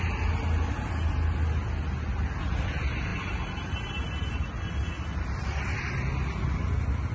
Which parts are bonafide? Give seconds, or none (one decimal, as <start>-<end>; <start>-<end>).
0.0-3.1; 5.9-7.1